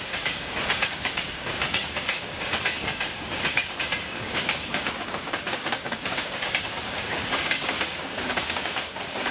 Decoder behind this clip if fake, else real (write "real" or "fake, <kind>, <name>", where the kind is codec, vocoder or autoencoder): fake, codec, DAC